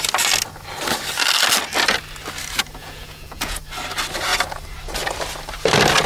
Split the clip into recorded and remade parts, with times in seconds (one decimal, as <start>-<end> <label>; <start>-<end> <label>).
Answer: 0.0-2.8 recorded; 2.8-3.6 remade; 3.6-6.1 recorded